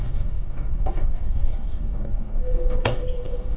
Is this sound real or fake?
fake